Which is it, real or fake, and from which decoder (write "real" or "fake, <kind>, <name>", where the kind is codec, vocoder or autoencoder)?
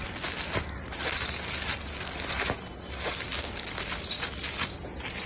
real